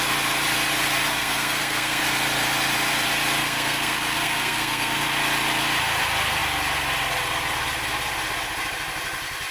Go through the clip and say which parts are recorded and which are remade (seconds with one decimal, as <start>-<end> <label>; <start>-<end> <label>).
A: 0.0-1.1 recorded; 1.1-2.0 remade; 2.0-3.4 recorded; 3.4-5.0 remade; 5.0-9.5 recorded